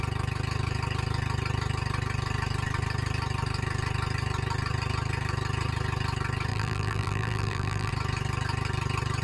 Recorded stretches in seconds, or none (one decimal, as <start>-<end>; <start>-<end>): 0.0-6.5; 7.9-9.2